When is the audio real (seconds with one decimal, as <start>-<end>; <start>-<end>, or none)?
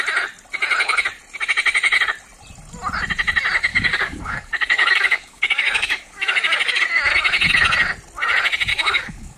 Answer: 0.0-3.7; 6.8-8.7